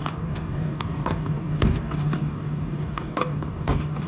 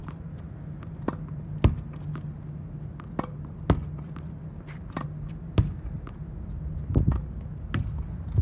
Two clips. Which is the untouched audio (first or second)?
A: second